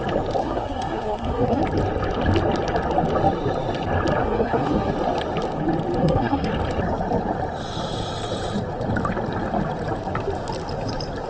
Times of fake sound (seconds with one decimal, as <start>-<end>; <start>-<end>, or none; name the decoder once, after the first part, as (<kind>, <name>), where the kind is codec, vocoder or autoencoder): 0.4-1.6 (codec, SNAC); 4.2-4.9; 6.0-6.5